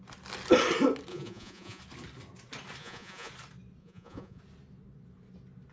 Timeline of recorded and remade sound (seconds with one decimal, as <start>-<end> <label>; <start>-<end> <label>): 0.0-1.1 recorded; 1.1-1.8 remade; 1.8-2.8 recorded; 2.8-3.3 remade; 3.3-3.8 recorded; 3.8-4.4 remade; 4.4-5.7 recorded